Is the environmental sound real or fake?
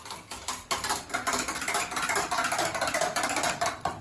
real